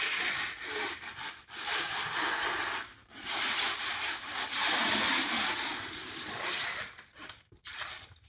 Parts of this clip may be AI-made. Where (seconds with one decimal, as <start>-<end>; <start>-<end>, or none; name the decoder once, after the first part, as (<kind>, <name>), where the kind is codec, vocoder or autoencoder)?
none